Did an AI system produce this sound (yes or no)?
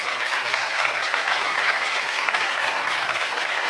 yes